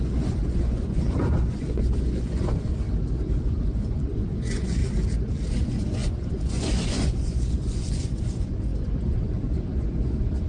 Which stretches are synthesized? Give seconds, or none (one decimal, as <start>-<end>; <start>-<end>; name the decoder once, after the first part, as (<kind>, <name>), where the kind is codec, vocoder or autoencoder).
0.0-2.7 (vocoder, Vocos); 3.4-4.8; 5.5-10.5